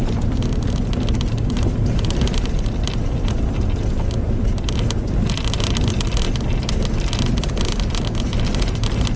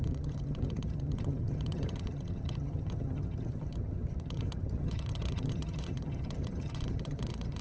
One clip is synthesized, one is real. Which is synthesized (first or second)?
second